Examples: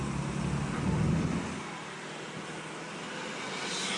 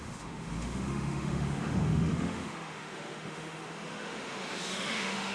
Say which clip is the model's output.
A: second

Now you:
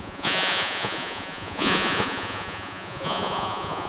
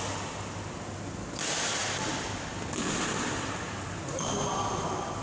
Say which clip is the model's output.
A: first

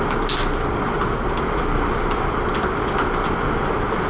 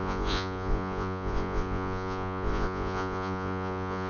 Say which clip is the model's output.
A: second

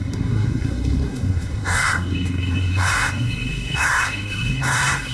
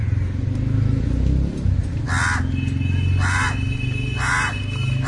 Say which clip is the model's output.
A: first